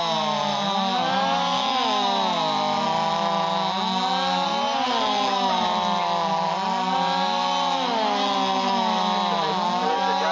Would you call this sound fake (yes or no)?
no